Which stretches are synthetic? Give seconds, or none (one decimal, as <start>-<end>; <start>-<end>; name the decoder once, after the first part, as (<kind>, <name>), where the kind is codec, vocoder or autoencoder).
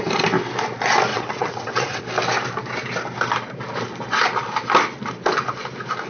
1.1-2.0 (vocoder, WaveNeXt)